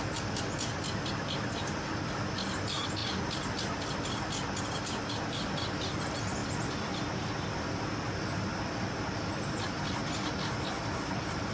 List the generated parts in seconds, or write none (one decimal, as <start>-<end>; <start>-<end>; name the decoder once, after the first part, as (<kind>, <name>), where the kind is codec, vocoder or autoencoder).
0.0-8.5 (vocoder, BigVGAN v2); 9.0-10.0; 11.0-11.5